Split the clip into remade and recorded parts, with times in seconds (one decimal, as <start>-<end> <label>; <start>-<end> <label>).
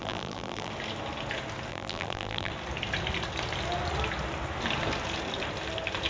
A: 0.0-0.7 remade; 0.7-1.7 recorded; 1.7-2.5 remade; 2.5-6.1 recorded